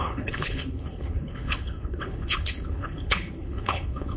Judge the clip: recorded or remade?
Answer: remade